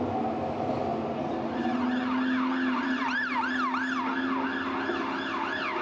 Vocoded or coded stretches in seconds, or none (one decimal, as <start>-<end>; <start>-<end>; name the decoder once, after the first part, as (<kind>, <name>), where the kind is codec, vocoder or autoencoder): none